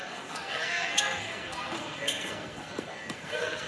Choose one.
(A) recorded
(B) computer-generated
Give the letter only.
B